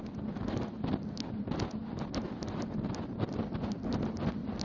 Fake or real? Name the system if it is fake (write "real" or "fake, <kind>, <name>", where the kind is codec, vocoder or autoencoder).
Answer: real